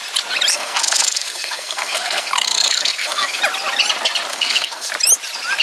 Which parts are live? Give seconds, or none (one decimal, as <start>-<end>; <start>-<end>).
0.0-0.5; 3.4-4.3; 4.9-5.6